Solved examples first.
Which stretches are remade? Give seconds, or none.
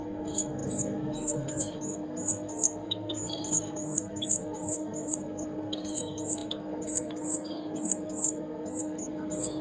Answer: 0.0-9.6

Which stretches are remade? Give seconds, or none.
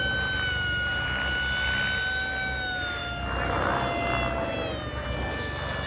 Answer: none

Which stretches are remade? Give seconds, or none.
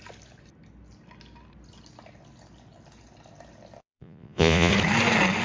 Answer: 3.8-4.7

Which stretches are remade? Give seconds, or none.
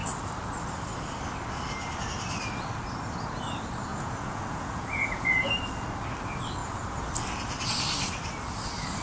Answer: 3.9-5.5; 6.6-7.1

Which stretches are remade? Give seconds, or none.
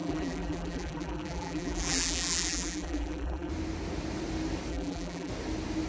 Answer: 0.0-3.5; 4.7-5.3